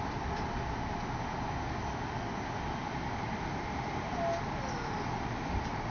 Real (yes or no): yes